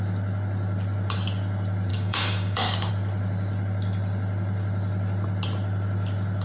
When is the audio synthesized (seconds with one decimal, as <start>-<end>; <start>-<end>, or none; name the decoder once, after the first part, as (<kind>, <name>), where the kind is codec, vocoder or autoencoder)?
1.9-2.9 (codec, DAC)

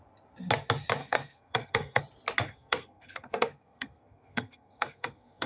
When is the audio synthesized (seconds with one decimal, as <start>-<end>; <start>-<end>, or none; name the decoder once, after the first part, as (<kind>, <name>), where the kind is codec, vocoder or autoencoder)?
1.0-2.0 (codec, SNAC); 2.5-5.5